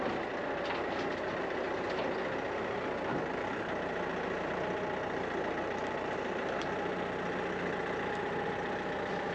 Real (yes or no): yes